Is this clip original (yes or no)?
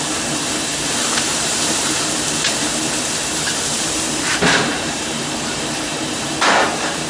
no